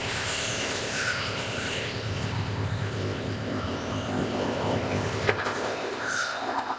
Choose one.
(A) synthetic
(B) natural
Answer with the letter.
A